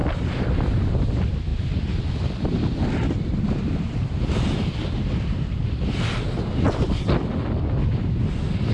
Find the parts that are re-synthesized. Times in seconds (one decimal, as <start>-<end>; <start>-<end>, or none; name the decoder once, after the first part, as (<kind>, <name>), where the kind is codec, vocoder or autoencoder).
0.0-1.0 (vocoder, BigVGAN v2); 1.5-6.2